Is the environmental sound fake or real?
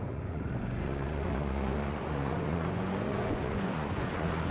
fake